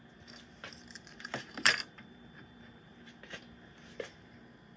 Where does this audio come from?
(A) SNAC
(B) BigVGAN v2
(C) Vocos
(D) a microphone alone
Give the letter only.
B